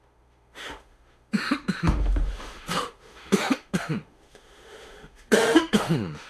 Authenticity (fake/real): fake